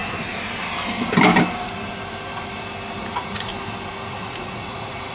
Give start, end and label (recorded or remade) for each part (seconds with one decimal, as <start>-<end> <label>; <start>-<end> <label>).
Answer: 0.0-3.1 recorded; 3.1-3.5 remade; 3.5-4.1 recorded; 4.1-5.1 remade